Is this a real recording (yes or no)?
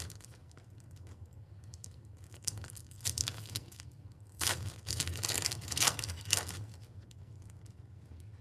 no